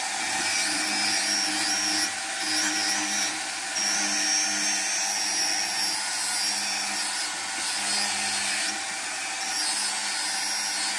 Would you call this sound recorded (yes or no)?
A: yes